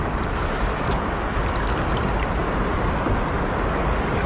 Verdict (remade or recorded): recorded